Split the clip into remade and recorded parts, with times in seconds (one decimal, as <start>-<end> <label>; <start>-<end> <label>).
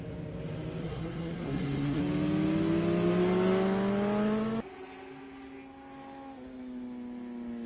0.0-0.8 recorded; 0.8-2.0 remade; 2.0-7.7 recorded